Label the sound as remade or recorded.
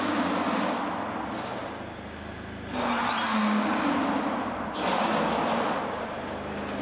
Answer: recorded